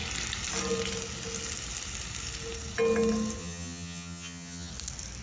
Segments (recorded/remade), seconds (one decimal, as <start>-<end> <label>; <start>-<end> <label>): 0.0-3.4 recorded; 3.4-4.7 remade; 4.7-5.2 recorded